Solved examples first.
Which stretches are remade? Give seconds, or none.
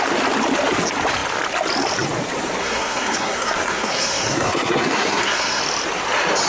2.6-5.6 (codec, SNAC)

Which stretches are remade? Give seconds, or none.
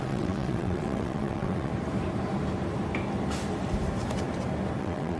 0.0-1.7 (vocoder, WaveNeXt); 4.8-5.2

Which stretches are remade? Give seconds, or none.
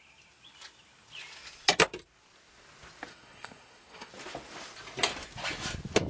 3.1-4.1 (codec, SNAC)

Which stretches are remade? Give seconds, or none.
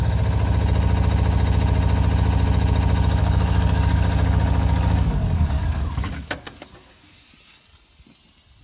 3.2-7.3 (codec, DAC)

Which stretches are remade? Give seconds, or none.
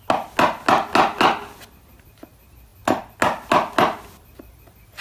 none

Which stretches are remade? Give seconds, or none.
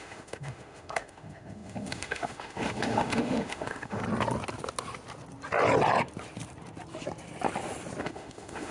0.0-4.0 (autoencoder, DAC-VAE); 8.0-8.7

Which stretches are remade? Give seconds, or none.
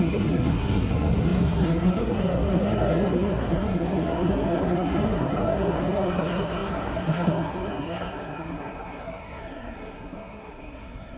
0.0-11.2 (codec, SNAC)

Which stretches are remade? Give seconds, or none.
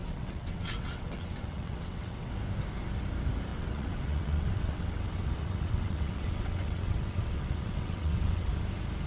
0.0-2.3 (vocoder, WaveNeXt); 3.5-8.5